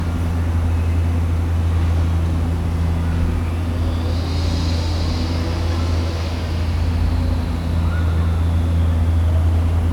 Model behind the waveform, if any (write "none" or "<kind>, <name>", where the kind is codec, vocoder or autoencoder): none